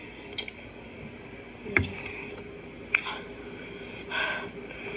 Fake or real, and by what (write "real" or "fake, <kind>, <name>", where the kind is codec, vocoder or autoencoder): real